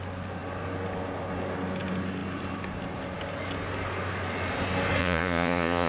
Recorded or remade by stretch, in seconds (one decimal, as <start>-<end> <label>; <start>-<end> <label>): 0.0-5.0 recorded; 5.0-5.9 remade